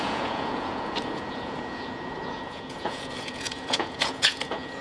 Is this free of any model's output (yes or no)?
no